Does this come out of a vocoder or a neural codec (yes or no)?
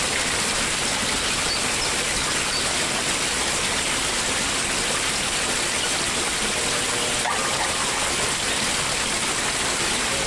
no